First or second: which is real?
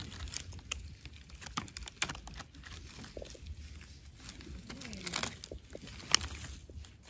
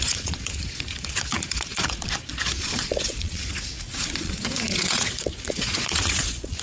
first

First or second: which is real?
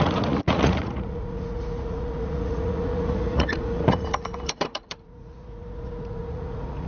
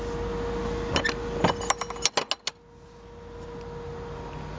second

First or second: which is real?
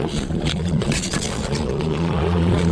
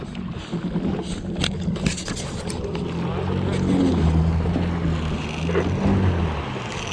second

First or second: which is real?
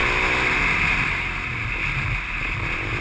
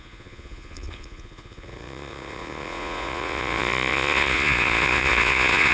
first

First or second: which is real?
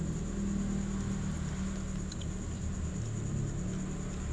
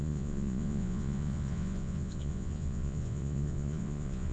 first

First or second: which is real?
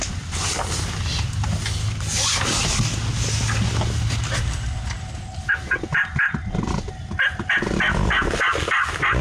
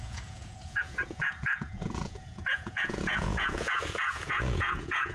first